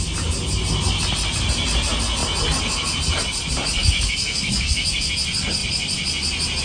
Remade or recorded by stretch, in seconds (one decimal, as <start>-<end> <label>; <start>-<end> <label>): 0.0-3.8 recorded; 3.8-5.1 remade; 5.1-6.6 recorded